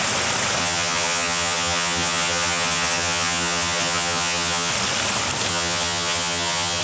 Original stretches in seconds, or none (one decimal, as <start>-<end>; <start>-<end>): 0.0-0.6; 4.7-5.5